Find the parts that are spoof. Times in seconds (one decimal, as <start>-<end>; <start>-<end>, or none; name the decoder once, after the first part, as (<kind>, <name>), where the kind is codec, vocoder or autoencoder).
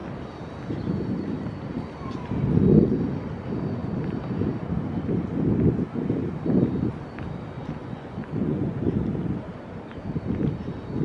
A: 7.8-8.8 (vocoder, Vocos)